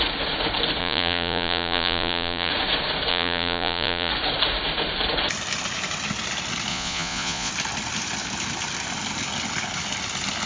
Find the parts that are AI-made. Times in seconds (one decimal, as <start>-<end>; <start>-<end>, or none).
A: 0.8-2.5; 3.1-4.1; 6.7-7.5